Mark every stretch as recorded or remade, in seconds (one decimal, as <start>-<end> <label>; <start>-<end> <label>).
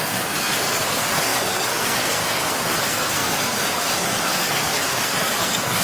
0.0-5.8 remade